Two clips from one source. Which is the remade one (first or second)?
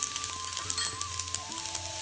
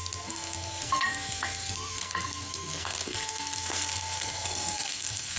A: second